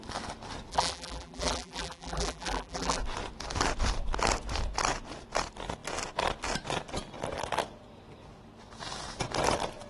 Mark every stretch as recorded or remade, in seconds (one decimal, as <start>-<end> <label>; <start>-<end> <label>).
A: 0.0-0.7 recorded; 0.7-3.0 remade; 3.0-9.9 recorded